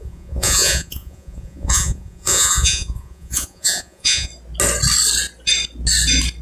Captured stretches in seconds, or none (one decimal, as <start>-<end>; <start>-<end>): 4.3-6.4